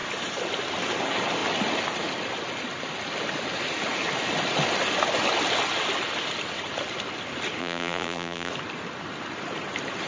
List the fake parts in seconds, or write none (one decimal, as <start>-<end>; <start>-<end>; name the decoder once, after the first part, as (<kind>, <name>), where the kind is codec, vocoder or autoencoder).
7.6-8.5 (vocoder, BigVGAN v2)